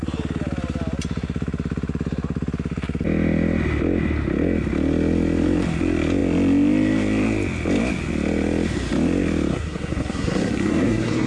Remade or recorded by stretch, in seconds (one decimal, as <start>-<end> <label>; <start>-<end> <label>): 0.0-9.5 recorded; 9.5-11.3 remade

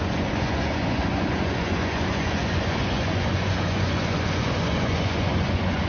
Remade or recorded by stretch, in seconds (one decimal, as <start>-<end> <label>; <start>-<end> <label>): 0.0-5.9 remade